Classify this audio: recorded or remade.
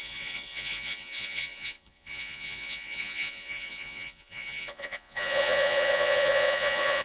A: remade